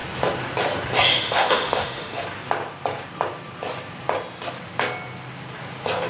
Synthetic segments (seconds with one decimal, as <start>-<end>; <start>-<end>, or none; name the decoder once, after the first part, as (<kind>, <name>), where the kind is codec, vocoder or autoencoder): 1.1-2.2 (autoencoder, DAC-VAE)